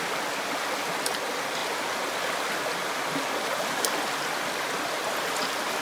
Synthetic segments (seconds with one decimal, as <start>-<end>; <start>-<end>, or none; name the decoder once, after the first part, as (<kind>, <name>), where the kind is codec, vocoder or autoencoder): none